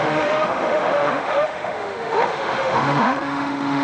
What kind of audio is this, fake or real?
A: fake